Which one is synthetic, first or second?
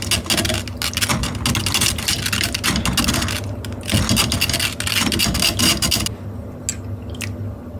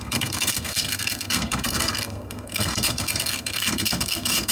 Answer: second